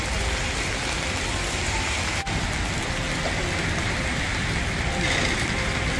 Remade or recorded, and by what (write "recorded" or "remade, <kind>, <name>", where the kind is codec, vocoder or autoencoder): recorded